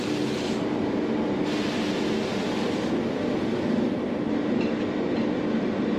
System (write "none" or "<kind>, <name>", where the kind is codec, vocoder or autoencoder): none